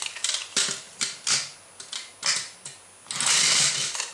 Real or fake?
real